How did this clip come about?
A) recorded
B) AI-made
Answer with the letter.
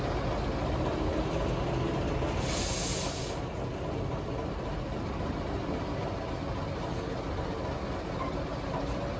A